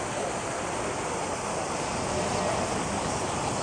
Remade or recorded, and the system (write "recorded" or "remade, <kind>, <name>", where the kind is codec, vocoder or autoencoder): recorded